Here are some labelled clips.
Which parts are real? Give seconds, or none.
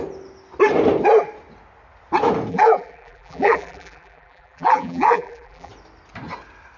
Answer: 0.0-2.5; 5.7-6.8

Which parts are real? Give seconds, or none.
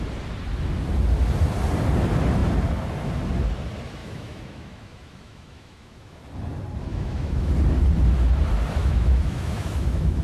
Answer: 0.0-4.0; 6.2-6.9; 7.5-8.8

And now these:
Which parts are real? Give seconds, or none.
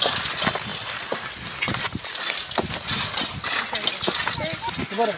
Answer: 0.0-5.2